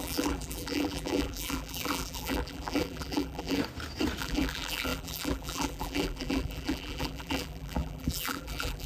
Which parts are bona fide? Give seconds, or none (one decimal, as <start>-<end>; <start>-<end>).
3.6-4.2